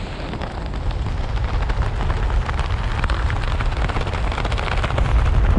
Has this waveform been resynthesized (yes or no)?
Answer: no